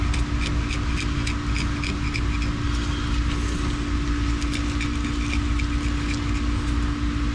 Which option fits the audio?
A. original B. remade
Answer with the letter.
A